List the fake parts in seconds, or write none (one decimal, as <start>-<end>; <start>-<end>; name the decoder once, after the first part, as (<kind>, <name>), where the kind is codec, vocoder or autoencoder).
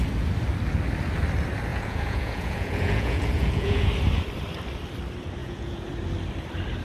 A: 1.7-3.9 (vocoder, Vocos); 5.4-5.9